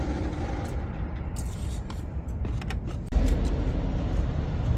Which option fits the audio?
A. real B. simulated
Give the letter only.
B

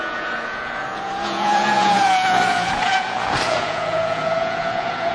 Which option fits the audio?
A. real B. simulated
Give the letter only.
B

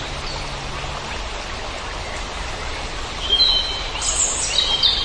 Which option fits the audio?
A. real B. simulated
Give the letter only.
A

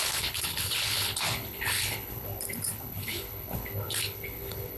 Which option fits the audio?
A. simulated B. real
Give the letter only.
A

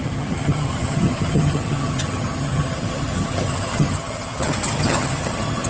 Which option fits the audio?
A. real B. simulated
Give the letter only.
B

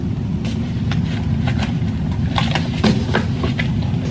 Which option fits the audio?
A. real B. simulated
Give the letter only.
A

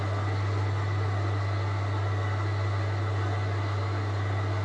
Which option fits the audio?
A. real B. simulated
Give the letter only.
A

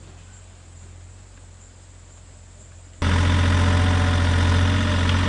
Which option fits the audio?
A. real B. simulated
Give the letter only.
A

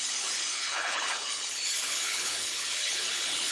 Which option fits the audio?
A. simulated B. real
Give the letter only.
A